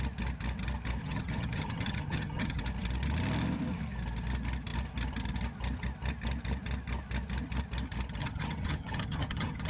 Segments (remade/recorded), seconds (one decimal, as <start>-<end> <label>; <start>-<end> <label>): 0.0-1.0 recorded; 1.0-2.6 remade; 2.6-8.2 recorded; 8.2-9.7 remade